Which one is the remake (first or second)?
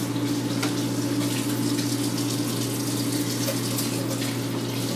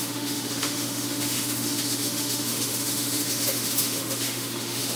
second